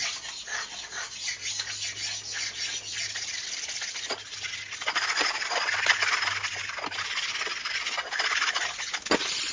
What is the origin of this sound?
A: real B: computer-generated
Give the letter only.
A